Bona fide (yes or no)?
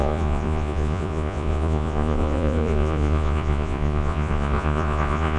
no